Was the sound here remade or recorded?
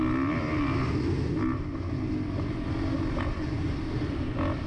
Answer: recorded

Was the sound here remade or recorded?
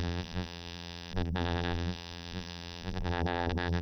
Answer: remade